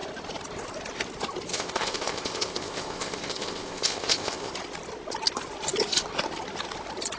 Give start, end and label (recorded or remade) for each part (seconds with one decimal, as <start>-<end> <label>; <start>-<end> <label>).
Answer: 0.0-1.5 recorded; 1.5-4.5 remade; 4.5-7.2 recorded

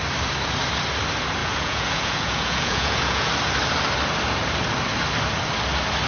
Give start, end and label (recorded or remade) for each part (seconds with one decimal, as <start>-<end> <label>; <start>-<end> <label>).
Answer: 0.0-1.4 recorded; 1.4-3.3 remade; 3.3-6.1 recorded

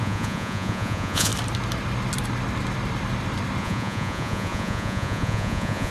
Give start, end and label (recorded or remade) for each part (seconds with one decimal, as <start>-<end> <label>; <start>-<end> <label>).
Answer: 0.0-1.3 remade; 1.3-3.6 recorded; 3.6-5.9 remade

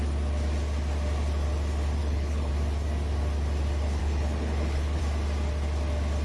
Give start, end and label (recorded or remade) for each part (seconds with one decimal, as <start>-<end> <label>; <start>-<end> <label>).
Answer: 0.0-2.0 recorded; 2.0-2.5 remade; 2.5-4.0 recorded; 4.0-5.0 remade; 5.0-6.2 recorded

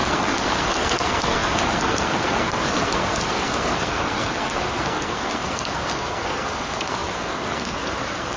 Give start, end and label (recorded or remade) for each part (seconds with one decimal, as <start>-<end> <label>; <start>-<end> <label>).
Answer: 0.0-8.4 remade

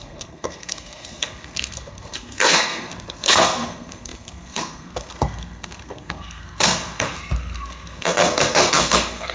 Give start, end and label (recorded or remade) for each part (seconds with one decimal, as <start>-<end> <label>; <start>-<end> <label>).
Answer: 0.0-9.3 remade